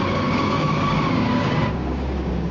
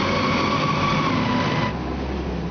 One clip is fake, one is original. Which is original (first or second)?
second